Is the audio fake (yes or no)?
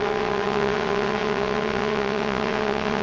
yes